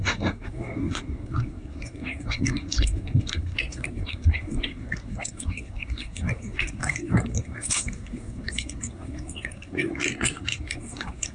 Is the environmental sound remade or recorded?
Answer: remade